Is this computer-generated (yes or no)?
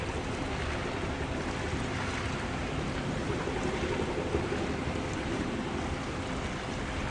no